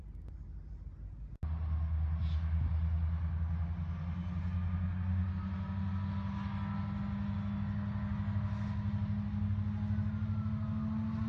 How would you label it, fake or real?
real